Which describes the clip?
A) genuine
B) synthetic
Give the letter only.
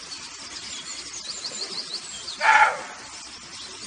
A